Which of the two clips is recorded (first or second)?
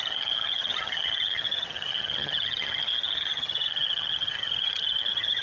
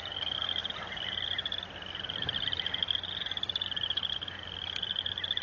second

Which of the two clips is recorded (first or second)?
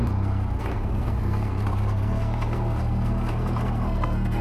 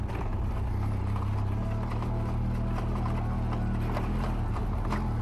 second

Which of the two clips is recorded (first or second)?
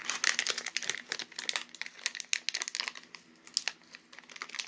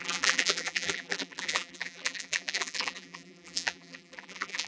first